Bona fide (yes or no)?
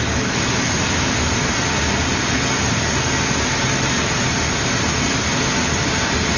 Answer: yes